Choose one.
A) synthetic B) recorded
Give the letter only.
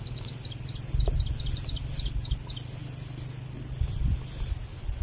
B